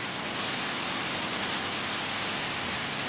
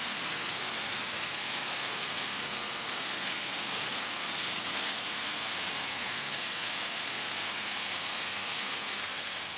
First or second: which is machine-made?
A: second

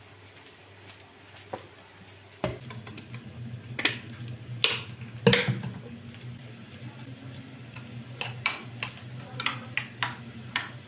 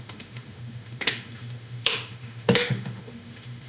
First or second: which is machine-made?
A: second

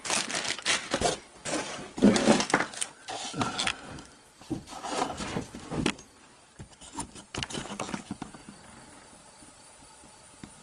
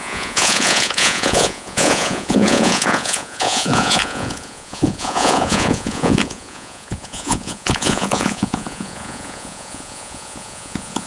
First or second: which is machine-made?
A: second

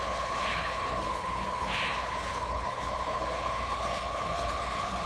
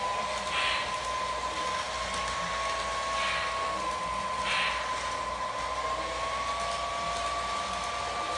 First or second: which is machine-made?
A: first